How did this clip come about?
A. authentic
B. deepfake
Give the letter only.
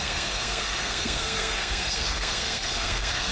B